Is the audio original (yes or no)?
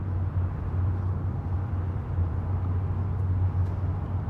yes